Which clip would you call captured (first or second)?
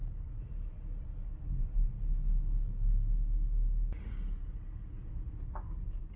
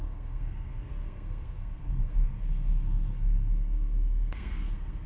first